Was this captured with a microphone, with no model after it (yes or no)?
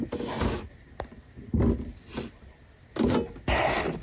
yes